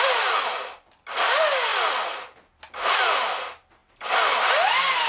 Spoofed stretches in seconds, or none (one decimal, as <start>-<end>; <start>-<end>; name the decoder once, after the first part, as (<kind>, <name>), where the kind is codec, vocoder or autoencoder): none